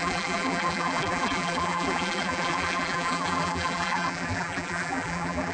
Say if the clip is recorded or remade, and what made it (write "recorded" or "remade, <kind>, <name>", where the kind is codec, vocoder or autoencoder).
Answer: remade, vocoder, BigVGAN v2